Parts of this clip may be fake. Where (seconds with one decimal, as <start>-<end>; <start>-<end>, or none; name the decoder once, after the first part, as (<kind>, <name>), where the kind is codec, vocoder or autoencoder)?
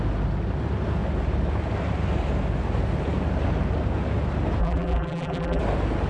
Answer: 4.6-5.6 (vocoder, BigVGAN v2)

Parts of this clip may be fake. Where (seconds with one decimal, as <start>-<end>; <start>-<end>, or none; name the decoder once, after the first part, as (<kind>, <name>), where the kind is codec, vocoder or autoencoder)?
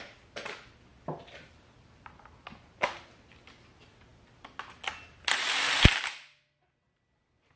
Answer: 0.9-2.3 (vocoder, BigVGAN v2)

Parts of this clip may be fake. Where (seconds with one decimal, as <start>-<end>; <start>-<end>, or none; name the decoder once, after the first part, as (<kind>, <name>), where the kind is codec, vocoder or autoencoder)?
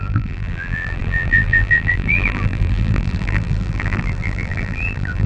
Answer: 0.0-5.3 (vocoder, BigVGAN v2)